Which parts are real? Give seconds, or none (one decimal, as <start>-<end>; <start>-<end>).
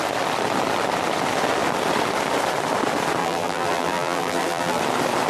0.0-3.2; 4.8-5.3